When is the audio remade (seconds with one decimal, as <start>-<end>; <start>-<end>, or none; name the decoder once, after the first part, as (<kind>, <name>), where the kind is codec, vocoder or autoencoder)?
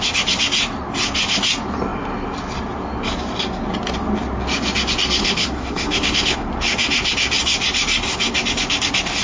5.2-6.5 (codec, SNAC)